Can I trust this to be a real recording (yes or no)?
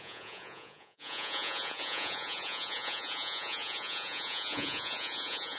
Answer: no